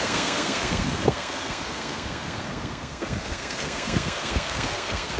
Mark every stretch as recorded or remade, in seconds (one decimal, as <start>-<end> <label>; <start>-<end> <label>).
0.0-5.2 remade